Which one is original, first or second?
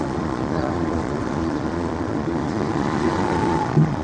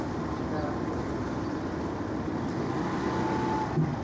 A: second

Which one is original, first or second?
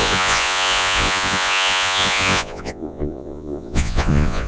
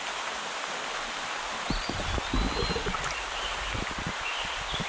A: second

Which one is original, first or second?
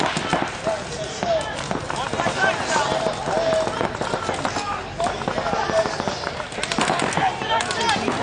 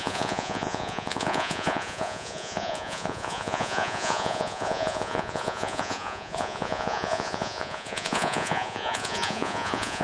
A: first